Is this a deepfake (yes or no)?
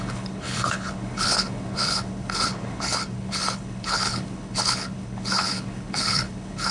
yes